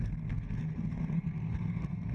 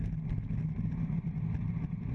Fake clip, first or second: first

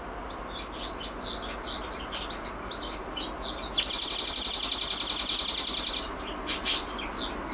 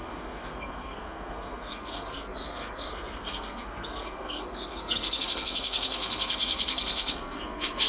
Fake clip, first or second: second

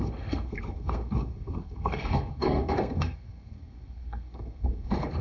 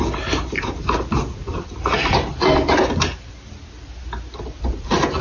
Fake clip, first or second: first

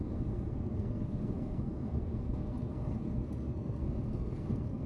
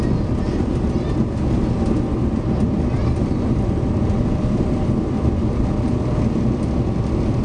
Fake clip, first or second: first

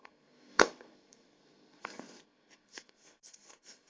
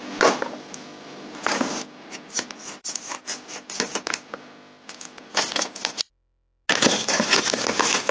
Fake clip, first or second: first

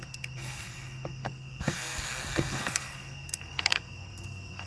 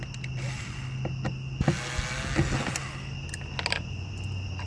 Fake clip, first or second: first